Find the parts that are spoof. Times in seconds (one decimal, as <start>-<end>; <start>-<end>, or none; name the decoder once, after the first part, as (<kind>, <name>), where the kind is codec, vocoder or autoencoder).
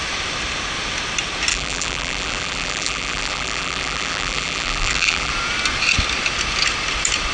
1.5-5.3 (vocoder, BigVGAN v2)